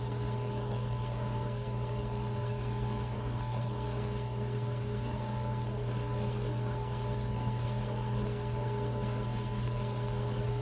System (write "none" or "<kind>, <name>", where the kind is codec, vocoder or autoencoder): codec, SNAC